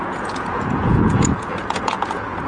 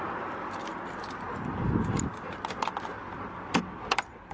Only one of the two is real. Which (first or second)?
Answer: second